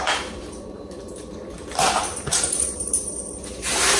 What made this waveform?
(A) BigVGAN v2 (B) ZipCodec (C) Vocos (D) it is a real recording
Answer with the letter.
A